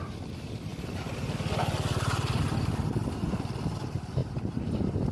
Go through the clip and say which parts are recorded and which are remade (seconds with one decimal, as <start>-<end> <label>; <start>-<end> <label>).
0.0-5.1 recorded